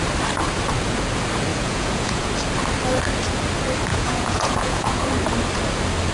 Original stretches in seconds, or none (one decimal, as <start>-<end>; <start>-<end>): 0.0-1.5; 2.3-3.9; 5.0-6.1